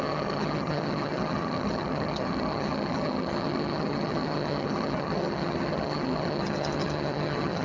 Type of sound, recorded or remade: remade